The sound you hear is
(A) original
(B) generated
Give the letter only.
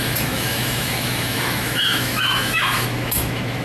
B